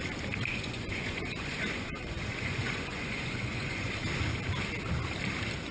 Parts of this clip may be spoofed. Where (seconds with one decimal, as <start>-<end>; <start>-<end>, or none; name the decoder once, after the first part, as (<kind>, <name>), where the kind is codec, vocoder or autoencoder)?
0.5-3.9 (vocoder, Vocos)